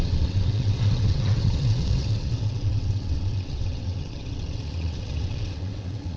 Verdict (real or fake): fake